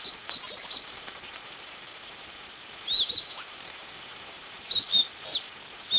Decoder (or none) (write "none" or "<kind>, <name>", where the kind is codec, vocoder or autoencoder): none